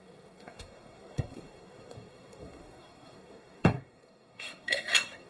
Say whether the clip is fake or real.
fake